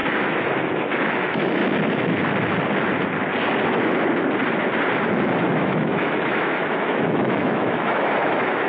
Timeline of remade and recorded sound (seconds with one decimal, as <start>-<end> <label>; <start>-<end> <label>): 0.0-1.6 remade; 1.6-5.5 recorded; 5.5-8.7 remade